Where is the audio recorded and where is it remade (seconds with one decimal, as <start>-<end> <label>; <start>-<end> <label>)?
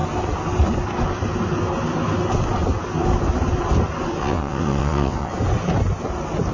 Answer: 0.0-4.2 recorded; 4.2-5.3 remade; 5.3-6.5 recorded